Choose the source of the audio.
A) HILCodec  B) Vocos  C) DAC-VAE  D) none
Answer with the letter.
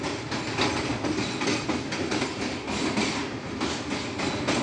D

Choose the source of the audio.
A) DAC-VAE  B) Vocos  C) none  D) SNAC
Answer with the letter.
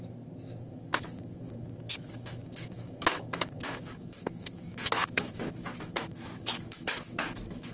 A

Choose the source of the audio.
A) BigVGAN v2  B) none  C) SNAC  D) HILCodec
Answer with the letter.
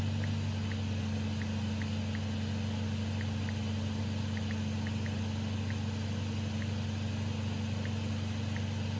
B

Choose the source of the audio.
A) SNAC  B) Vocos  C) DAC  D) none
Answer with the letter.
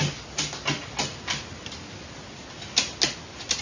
D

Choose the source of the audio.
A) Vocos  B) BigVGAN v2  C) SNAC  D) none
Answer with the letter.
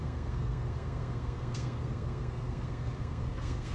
C